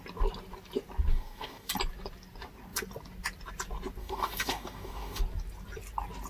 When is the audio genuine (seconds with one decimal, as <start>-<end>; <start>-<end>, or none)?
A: 0.0-1.1; 1.7-4.0; 5.2-6.3